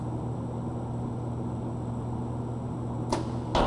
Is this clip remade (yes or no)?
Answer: no